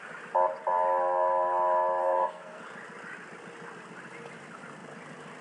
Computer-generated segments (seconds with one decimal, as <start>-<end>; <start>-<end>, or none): 2.0-2.6